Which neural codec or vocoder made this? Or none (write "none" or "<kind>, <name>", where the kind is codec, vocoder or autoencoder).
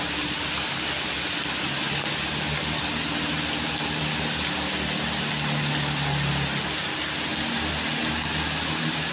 none